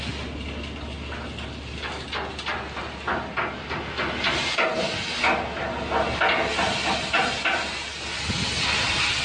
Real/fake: real